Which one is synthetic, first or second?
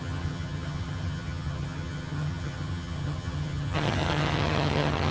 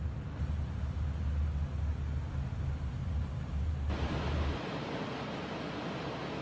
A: first